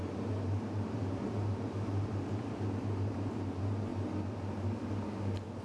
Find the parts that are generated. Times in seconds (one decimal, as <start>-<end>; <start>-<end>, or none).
0.0-3.4